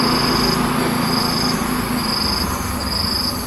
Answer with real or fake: real